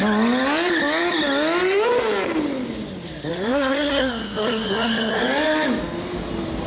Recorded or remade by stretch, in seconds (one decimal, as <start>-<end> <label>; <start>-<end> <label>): 0.0-3.3 recorded; 3.3-5.2 remade; 5.2-6.7 recorded